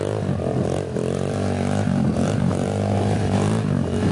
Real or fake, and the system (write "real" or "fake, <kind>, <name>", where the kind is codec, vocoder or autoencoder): fake, vocoder, BigVGAN v2